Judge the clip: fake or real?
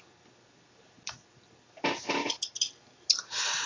real